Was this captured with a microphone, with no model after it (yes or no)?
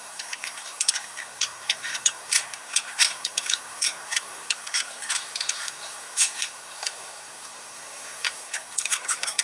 no